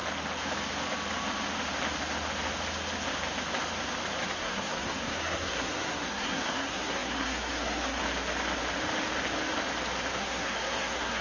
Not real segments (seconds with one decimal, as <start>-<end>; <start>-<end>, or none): 4.3-8.0; 10.2-11.2